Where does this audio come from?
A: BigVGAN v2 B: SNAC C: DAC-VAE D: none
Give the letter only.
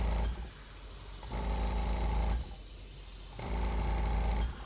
D